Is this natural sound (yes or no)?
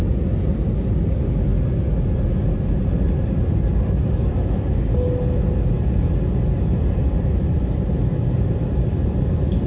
yes